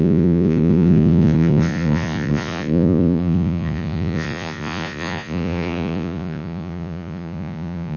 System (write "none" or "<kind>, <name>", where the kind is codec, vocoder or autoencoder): vocoder, Vocos